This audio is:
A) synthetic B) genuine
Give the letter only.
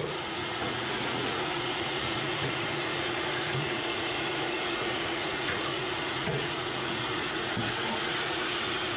A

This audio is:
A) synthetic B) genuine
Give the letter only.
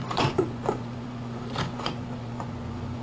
A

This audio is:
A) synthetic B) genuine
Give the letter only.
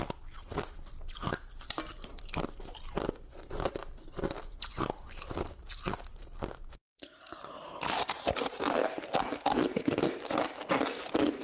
B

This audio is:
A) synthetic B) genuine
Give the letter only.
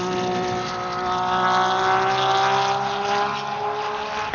B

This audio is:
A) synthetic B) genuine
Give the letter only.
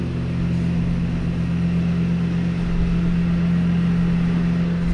B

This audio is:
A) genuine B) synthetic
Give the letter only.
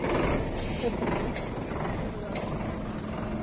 A